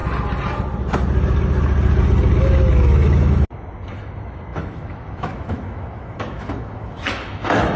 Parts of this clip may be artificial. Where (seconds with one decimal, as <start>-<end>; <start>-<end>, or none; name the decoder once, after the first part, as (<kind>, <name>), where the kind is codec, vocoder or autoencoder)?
2.4-7.8 (autoencoder, DAC-VAE)